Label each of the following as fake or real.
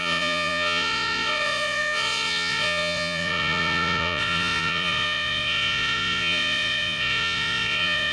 fake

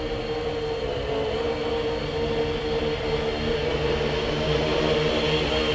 real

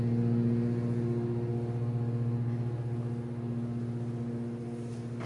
real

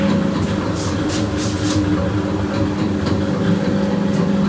real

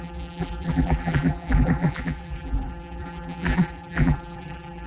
fake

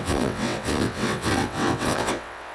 fake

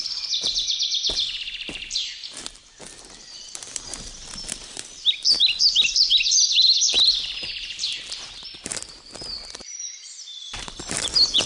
fake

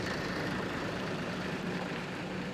fake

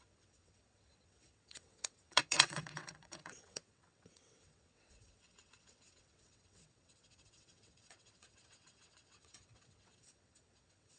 fake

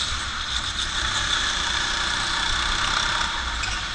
real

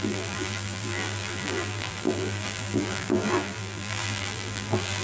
fake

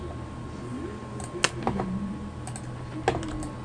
real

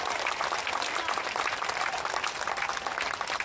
real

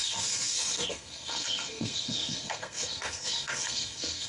fake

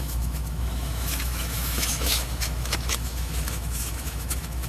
fake